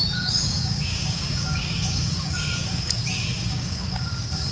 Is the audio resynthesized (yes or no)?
yes